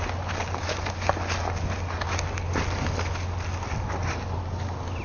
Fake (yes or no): no